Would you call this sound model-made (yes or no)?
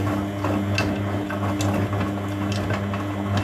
no